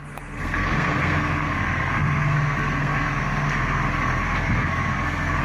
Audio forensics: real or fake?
fake